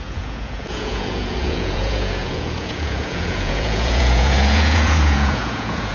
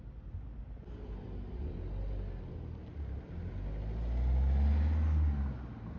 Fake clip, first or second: first